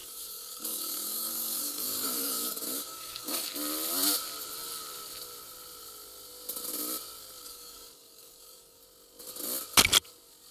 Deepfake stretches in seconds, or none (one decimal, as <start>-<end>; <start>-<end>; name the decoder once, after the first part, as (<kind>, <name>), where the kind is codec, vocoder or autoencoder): 0.0-3.5 (codec, DAC); 7.4-8.8